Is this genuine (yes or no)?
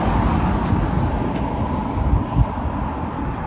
yes